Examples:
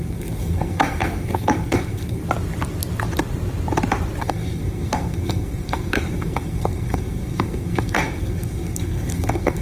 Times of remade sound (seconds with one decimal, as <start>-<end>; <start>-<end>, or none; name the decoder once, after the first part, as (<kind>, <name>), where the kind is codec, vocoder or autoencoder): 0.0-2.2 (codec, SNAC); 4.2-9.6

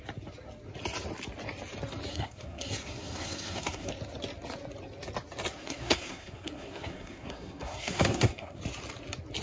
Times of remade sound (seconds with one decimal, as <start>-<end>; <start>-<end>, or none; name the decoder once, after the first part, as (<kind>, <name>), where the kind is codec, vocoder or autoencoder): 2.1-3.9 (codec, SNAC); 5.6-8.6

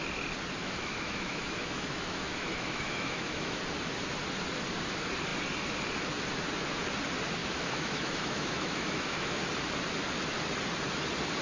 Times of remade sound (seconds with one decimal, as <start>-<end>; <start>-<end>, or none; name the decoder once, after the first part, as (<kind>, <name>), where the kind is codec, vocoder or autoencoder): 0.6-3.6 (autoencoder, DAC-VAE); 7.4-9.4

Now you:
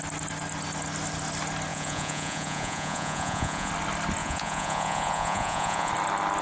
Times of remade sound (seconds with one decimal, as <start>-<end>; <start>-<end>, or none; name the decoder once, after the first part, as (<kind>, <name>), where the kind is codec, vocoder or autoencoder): 1.7-3.7 (vocoder, Vocos); 4.2-5.9

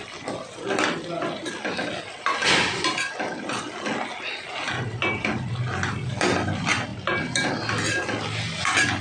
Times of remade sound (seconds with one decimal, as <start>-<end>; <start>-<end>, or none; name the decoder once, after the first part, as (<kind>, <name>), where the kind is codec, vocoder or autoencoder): none

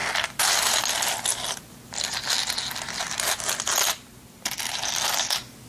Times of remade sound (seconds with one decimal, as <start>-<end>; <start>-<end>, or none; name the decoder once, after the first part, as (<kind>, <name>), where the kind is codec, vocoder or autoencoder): none

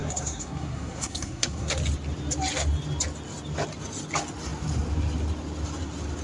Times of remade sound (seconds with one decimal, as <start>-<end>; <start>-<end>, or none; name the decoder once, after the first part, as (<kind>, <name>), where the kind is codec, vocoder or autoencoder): 0.0-1.7 (codec, SNAC)